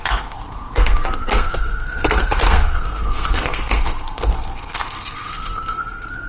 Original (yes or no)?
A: no